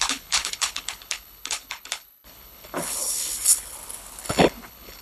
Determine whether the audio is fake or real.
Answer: fake